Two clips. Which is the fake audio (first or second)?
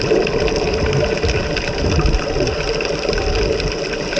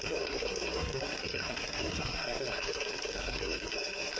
second